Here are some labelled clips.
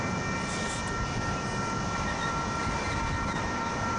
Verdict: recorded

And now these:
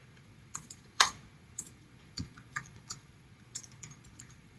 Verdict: remade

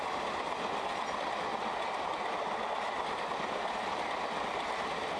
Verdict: recorded